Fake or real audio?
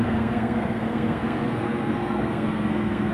fake